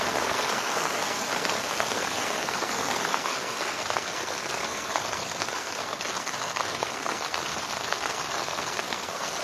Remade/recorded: remade